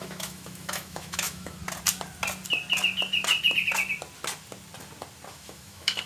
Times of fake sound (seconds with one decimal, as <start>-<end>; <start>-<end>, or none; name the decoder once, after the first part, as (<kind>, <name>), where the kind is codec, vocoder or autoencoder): 0.0-1.6 (autoencoder, DAC-VAE); 5.3-6.1